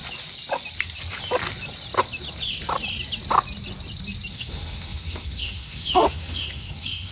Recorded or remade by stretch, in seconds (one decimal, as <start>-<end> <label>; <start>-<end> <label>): 0.0-4.3 recorded; 4.3-7.1 remade